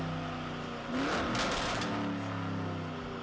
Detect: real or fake real